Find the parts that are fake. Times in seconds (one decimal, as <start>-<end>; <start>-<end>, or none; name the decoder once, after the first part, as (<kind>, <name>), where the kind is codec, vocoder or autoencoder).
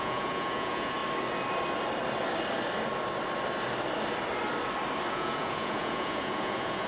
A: 0.0-1.0 (vocoder, Vocos); 5.1-6.9